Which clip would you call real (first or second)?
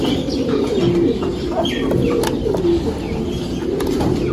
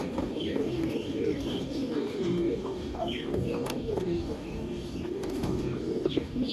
first